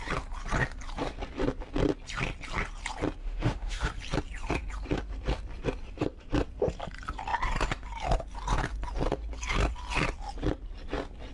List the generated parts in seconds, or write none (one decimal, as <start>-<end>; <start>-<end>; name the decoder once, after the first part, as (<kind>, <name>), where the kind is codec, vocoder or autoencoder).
3.2-3.9 (autoencoder, DAC-VAE)